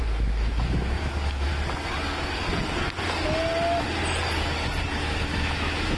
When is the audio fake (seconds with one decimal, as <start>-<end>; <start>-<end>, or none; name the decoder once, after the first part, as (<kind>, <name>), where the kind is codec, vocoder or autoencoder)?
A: 0.0-1.5 (autoencoder, DAC-VAE); 4.9-6.0